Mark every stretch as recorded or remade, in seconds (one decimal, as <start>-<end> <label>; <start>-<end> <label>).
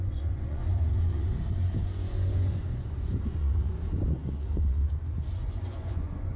0.0-4.8 remade; 4.8-5.3 recorded; 5.3-6.4 remade